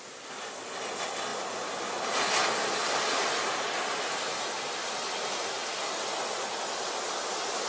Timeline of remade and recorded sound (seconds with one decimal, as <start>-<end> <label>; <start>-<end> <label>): 0.0-1.3 recorded; 1.3-3.4 remade; 3.4-7.7 recorded

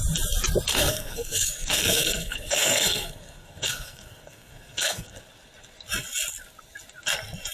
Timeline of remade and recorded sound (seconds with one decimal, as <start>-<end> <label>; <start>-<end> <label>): 0.0-0.7 recorded; 0.7-5.2 remade; 5.2-7.5 recorded

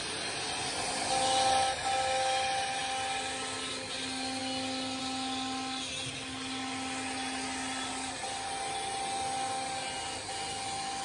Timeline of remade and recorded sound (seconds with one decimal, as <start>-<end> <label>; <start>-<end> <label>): 0.0-11.0 recorded

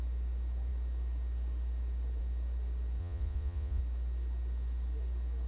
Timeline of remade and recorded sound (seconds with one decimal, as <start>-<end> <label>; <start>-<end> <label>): 0.0-3.0 recorded; 3.0-3.8 remade; 3.8-5.5 recorded